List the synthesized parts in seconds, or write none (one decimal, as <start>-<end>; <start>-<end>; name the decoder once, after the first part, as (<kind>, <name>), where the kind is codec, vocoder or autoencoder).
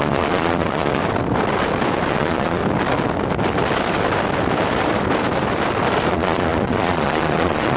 0.0-1.0 (vocoder, Vocos); 2.1-2.6; 6.1-7.8